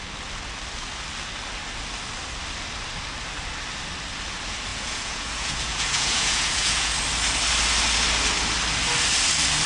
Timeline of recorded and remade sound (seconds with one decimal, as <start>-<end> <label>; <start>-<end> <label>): 0.0-4.7 recorded; 4.7-6.9 remade; 6.9-9.7 recorded